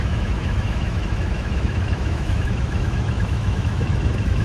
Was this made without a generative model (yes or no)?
no